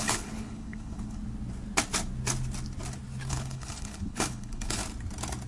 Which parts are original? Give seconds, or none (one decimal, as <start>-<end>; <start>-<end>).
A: 1.2-3.3; 4.8-5.5